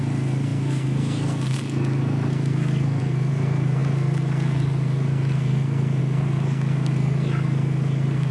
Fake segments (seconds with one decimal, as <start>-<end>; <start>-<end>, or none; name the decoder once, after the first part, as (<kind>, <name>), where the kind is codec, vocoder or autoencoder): 0.0-8.3 (codec, SNAC)